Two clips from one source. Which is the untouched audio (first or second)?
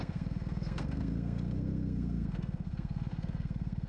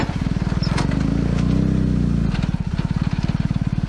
second